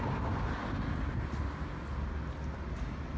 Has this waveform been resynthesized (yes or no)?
no